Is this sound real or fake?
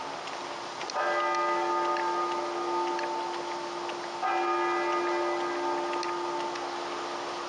real